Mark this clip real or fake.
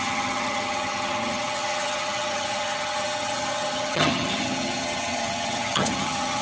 fake